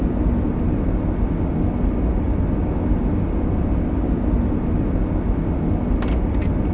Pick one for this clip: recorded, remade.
recorded